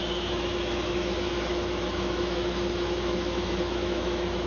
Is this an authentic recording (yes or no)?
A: no